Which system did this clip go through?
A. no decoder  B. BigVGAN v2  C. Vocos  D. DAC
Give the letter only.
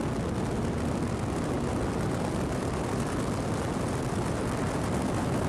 A